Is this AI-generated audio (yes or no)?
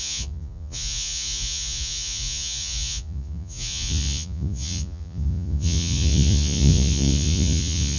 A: yes